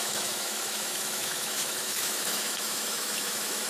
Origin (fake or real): fake